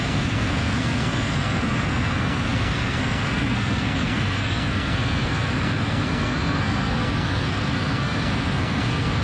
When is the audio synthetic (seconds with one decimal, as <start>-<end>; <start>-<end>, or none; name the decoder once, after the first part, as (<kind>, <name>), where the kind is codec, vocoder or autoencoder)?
0.0-9.2 (codec, SNAC)

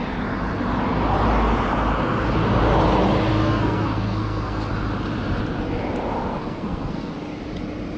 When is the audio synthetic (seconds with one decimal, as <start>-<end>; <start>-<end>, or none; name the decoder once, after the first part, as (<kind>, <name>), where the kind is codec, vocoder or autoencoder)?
3.3-4.7 (codec, SNAC); 6.3-7.1

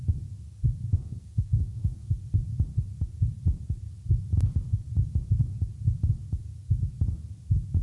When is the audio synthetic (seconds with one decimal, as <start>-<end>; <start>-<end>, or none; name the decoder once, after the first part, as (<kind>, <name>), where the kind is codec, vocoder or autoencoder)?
0.9-2.1 (codec, SNAC)

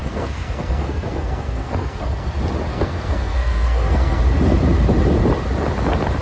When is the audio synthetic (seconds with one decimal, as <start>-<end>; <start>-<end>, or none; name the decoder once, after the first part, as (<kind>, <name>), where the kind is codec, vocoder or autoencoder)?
0.0-2.3 (codec, SNAC); 2.7-4.2

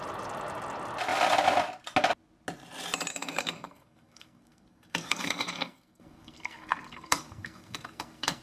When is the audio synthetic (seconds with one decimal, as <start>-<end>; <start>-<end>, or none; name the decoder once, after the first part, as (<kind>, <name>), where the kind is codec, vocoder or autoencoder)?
3.1-8.4 (codec, SNAC)

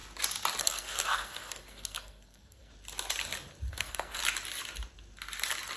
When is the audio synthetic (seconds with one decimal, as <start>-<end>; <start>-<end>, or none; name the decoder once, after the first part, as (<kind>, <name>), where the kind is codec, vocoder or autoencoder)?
0.6-2.7 (codec, SNAC); 3.7-4.2

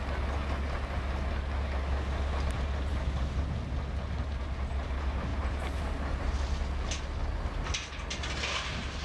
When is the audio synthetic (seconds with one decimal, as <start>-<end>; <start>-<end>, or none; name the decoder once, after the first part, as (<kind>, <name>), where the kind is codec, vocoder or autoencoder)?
none